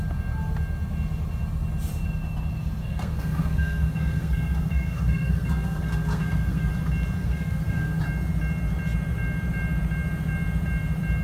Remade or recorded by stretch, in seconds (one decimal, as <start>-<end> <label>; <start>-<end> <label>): 0.0-2.8 recorded; 2.8-6.7 remade; 6.7-7.2 recorded; 7.2-8.0 remade; 8.0-11.2 recorded